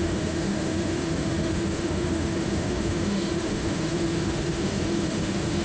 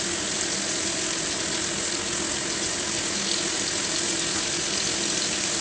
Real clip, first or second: second